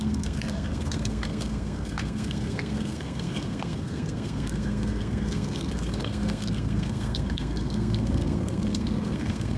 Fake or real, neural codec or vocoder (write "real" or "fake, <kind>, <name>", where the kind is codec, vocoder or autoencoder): fake, codec, SNAC